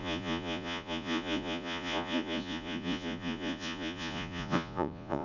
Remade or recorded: remade